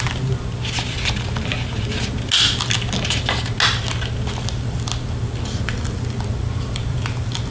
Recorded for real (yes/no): yes